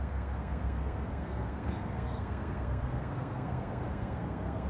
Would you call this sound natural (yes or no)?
no